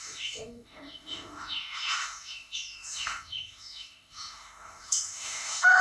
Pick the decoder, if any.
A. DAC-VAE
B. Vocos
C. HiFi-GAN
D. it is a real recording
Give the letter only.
A